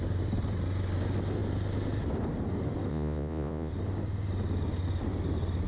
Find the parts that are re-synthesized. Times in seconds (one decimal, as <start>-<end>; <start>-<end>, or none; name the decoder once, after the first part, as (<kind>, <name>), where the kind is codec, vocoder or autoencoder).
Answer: 2.9-3.7 (vocoder, Vocos)